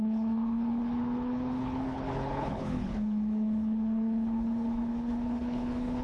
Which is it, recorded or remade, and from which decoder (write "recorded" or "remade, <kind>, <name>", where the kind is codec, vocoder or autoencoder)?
remade, codec, HILCodec